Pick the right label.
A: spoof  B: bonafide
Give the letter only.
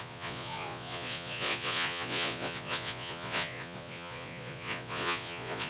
A